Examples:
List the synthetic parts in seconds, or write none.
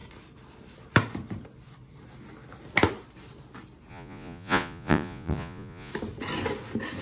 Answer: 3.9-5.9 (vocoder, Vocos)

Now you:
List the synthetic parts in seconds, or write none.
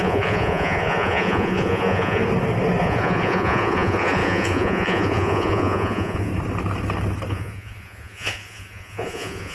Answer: 0.0-2.2 (vocoder, Vocos); 2.8-6.3; 7.3-9.5